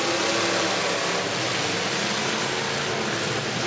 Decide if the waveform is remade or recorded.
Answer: recorded